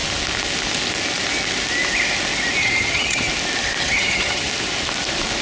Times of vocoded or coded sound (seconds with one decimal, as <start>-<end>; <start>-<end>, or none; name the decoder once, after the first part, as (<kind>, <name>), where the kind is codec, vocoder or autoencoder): 2.6-3.3 (vocoder, HiFi-GAN); 3.8-4.5